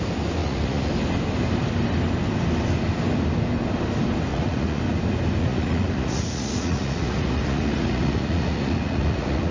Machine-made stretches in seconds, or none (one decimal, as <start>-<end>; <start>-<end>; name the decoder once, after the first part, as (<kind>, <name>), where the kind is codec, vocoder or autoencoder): 0.4-0.9 (vocoder, Vocos); 4.3-4.8; 5.4-9.5